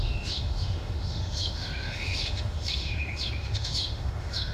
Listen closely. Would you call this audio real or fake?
fake